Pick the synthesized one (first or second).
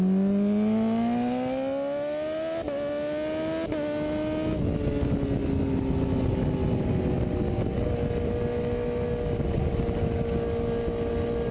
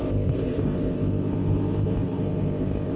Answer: second